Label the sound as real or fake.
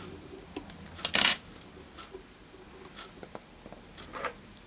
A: real